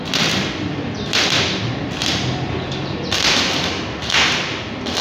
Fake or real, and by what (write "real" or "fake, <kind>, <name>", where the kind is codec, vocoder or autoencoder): fake, vocoder, BigVGAN v2